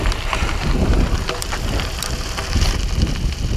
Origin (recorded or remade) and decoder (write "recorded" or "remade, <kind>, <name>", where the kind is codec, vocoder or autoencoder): recorded